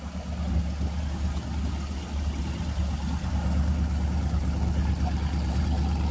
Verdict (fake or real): real